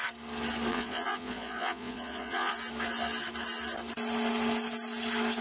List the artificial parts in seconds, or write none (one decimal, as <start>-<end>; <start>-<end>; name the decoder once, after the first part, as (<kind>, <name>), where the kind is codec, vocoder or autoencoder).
0.7-2.5 (vocoder, Vocos)